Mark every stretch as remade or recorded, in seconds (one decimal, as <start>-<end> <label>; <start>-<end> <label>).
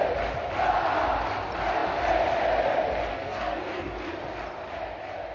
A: 0.0-3.1 recorded; 3.1-3.9 remade; 3.9-5.3 recorded